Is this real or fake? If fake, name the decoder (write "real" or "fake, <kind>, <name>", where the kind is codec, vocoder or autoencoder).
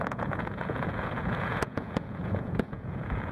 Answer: fake, vocoder, Vocos